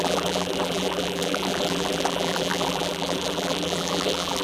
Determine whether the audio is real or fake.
fake